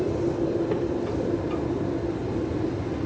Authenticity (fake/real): real